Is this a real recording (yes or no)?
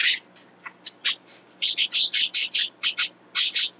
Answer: yes